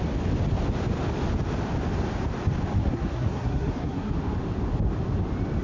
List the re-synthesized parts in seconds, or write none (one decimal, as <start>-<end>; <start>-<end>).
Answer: 2.8-4.1

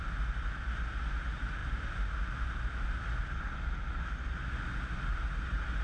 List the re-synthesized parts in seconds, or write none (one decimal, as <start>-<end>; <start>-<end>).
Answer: none

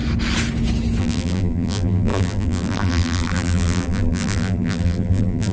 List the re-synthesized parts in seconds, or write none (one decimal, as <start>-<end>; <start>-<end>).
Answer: 1.0-5.5